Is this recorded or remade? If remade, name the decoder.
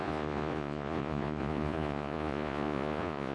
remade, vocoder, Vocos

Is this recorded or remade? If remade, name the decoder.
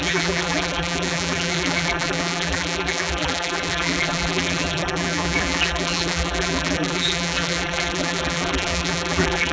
remade, vocoder, BigVGAN v2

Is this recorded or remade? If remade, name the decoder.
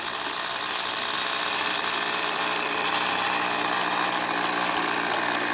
recorded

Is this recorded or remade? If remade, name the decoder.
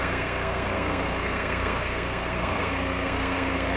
remade, codec, SNAC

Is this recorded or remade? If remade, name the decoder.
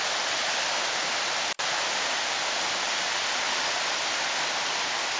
recorded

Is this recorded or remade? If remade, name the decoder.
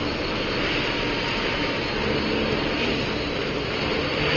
recorded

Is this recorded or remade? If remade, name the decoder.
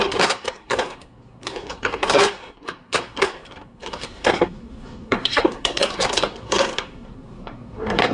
remade, codec, SNAC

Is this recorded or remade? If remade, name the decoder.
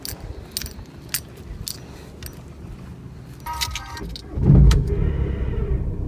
recorded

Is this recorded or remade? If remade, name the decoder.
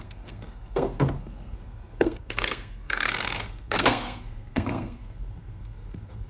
remade, codec, SNAC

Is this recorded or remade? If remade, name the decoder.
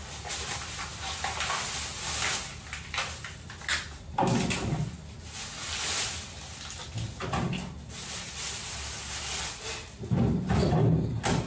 recorded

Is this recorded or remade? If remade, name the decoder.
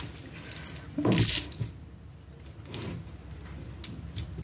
recorded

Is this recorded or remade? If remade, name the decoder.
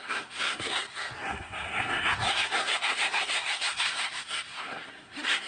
remade, codec, SNAC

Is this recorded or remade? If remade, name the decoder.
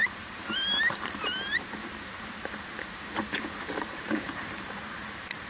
remade, vocoder, BigVGAN v2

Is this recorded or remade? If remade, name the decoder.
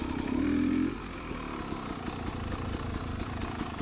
remade, vocoder, BigVGAN v2